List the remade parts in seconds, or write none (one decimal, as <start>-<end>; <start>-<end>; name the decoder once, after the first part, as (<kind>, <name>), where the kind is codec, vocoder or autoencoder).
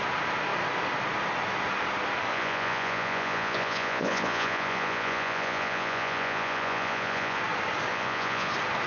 2.3-7.4 (vocoder, Vocos); 7.9-8.5